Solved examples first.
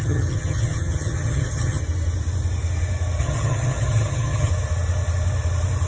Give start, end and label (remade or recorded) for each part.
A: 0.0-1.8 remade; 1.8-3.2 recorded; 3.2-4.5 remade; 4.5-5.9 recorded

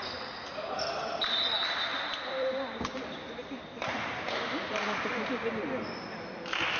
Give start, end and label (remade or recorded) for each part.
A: 0.0-1.9 recorded; 1.9-5.3 remade; 5.3-6.8 recorded

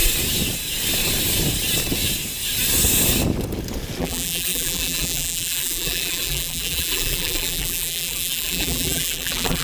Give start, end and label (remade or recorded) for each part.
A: 0.0-4.0 recorded; 4.0-9.6 remade

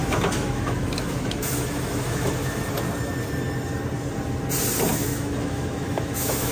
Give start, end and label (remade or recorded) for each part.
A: 0.0-2.7 remade; 2.7-4.9 recorded; 4.9-6.5 remade

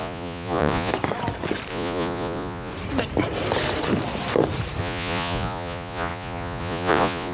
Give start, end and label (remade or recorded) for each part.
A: 0.0-0.9 remade; 0.9-1.7 recorded; 1.7-2.7 remade; 2.7-4.8 recorded; 4.8-7.3 remade

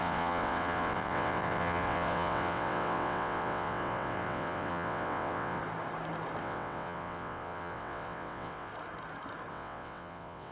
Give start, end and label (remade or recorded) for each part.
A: 0.0-5.6 remade; 5.6-6.4 recorded; 6.4-8.7 remade; 8.7-9.5 recorded; 9.5-10.5 remade

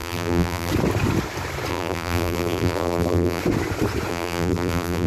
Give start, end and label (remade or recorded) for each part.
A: 0.0-0.7 remade; 0.7-1.7 recorded; 1.7-3.4 remade; 3.4-4.1 recorded; 4.1-5.1 remade

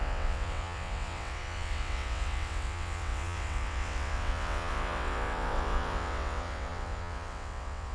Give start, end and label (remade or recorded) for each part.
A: 0.0-7.9 remade